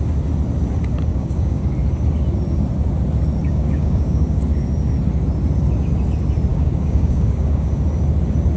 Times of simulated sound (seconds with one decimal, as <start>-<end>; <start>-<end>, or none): 1.1-1.6; 3.4-4.4; 6.5-7.7